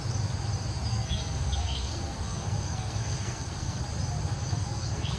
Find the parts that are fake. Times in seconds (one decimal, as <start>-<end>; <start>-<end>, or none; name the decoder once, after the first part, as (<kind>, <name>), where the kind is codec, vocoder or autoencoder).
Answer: 0.9-3.8 (codec, SNAC); 4.5-5.2